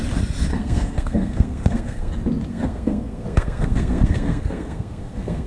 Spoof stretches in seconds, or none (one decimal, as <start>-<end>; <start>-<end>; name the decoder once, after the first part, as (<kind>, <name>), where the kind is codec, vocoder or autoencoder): 0.5-2.1 (codec, SNAC); 2.5-5.5